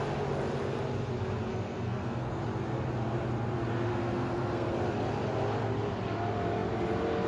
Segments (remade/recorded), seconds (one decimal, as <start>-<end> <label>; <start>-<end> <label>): 0.0-1.5 recorded; 1.5-2.4 remade; 2.4-3.9 recorded; 3.9-4.7 remade; 4.7-7.3 recorded